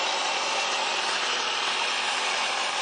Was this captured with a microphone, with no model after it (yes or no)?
yes